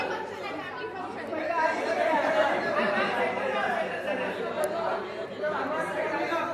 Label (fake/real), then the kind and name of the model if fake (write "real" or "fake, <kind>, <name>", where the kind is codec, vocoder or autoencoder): fake, vocoder, BigVGAN v2